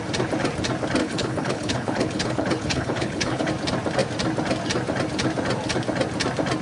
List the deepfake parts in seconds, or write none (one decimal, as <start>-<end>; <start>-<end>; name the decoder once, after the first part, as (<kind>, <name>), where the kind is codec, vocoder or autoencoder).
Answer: 1.0-3.5 (codec, HILCodec)